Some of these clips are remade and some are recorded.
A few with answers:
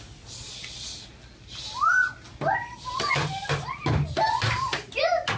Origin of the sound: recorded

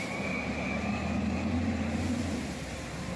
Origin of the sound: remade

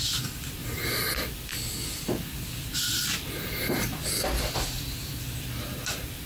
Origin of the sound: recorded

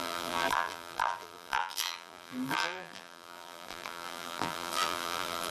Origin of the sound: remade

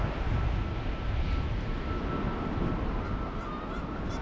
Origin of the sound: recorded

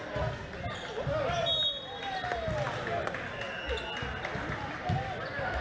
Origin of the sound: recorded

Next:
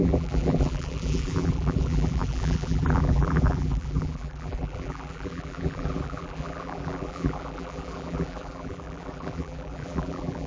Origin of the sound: remade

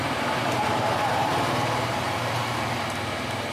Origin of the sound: recorded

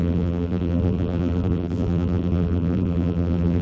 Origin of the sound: remade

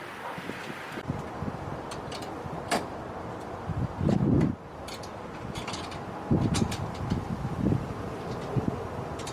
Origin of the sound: remade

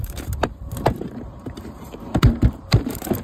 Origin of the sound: remade